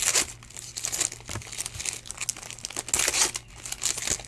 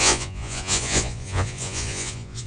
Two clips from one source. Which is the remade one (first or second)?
second